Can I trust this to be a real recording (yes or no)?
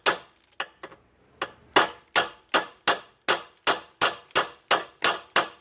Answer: yes